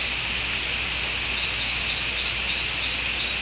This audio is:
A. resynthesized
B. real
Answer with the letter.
B